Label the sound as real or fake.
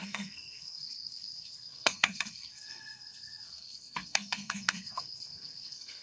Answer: fake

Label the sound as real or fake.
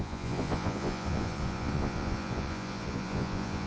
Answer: fake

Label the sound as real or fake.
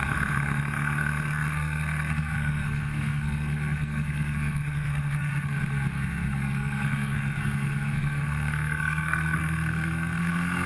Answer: fake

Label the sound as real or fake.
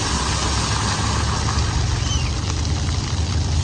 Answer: real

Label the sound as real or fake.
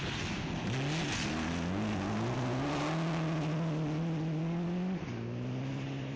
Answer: real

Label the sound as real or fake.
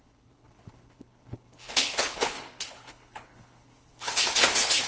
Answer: fake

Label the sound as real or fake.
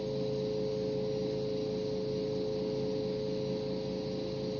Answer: real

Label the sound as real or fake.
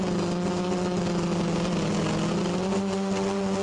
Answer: real